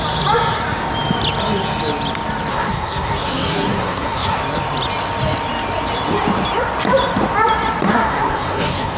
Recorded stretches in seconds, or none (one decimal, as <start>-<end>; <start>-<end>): 0.0-2.5; 4.4-7.9